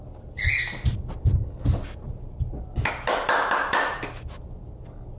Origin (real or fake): real